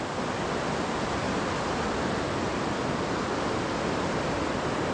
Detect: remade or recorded recorded